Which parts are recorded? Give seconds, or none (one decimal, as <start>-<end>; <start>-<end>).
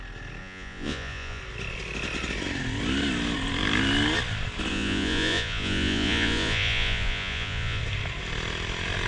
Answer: 0.0-0.4; 1.4-4.7; 7.8-9.1